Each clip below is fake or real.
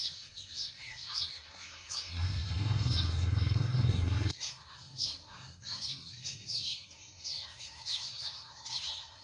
fake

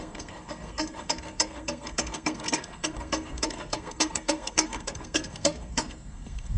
fake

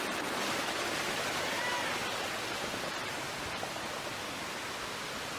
real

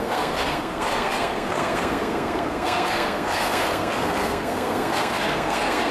fake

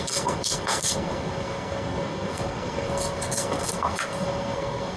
fake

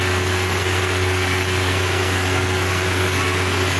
fake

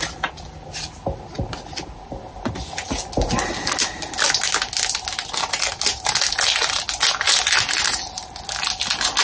real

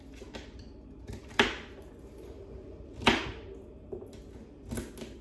real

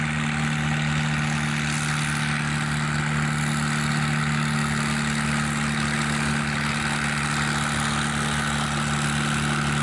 real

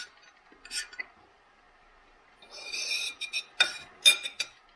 real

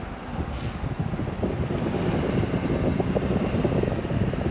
real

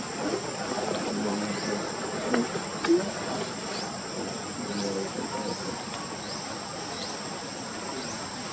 real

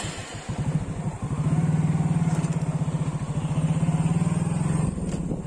real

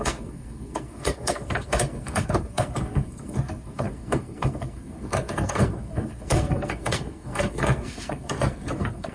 fake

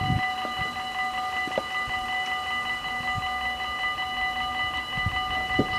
real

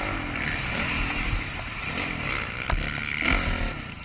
real